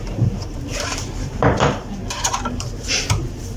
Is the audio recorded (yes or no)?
no